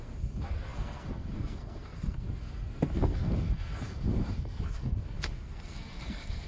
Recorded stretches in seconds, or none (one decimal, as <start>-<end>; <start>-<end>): none